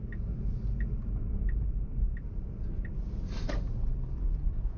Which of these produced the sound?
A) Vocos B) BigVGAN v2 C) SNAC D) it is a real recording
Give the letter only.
D